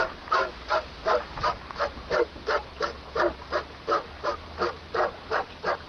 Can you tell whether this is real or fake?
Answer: fake